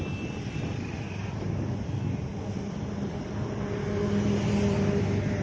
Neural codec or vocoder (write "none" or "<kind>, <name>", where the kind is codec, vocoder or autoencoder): none